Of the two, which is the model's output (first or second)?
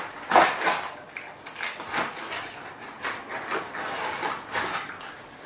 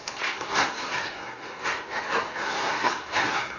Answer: second